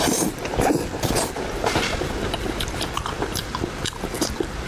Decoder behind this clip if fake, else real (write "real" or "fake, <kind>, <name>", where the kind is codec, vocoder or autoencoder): real